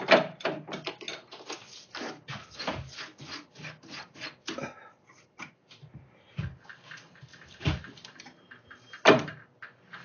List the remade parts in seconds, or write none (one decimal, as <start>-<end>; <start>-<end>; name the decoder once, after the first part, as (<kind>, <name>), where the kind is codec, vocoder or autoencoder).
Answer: 7.3-9.4 (vocoder, BigVGAN v2)